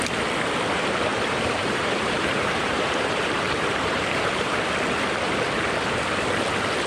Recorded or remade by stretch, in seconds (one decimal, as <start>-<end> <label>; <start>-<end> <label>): 0.0-1.1 recorded; 1.1-4.5 remade; 4.5-6.9 recorded